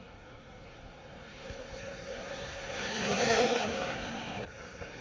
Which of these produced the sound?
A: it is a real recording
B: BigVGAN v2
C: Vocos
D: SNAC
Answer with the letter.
D